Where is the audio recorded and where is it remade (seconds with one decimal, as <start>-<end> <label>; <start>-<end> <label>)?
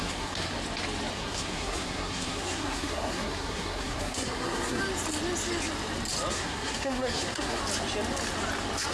0.0-0.5 remade; 0.5-1.1 recorded; 1.1-4.8 remade; 4.8-6.3 recorded; 6.3-7.6 remade; 7.6-8.9 recorded